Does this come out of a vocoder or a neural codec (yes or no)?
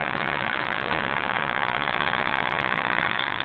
yes